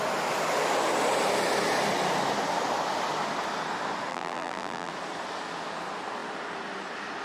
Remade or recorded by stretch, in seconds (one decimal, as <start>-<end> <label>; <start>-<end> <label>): 0.0-4.1 recorded; 4.1-4.9 remade; 4.9-7.2 recorded